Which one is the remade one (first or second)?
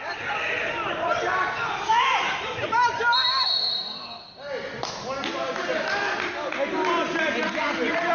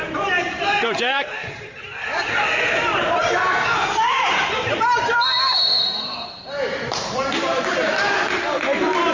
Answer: second